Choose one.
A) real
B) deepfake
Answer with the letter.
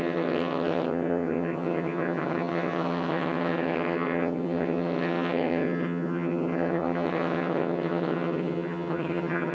B